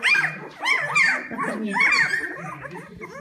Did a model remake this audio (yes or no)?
yes